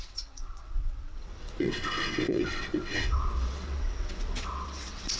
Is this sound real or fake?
fake